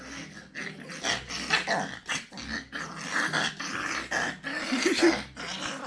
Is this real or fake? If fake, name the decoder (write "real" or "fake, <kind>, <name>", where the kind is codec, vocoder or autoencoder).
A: real